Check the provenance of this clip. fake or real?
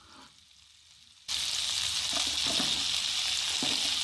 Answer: real